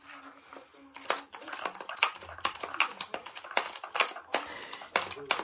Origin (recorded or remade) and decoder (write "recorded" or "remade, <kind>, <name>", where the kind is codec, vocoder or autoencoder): recorded